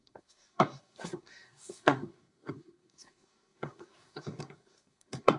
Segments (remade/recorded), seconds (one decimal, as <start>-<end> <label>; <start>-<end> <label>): 0.0-5.4 remade